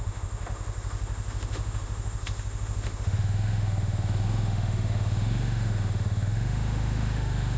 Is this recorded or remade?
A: remade